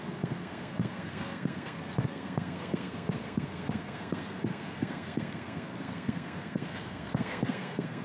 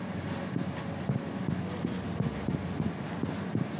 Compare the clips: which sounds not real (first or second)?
first